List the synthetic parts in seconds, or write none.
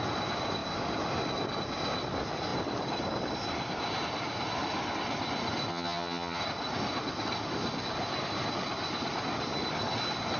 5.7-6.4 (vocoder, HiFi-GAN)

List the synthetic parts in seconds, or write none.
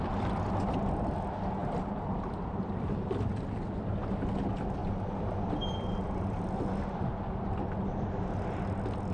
1.6-2.5 (vocoder, BigVGAN v2)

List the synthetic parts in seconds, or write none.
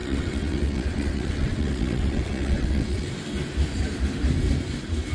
0.0-3.1 (vocoder, WaveNeXt)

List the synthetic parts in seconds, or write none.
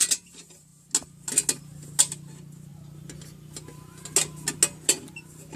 none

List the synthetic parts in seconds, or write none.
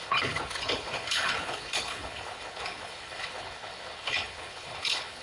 0.0-5.2 (codec, HILCodec)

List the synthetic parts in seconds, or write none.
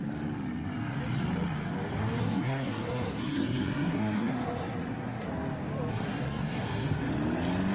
2.2-5.3 (codec, SNAC); 5.9-7.1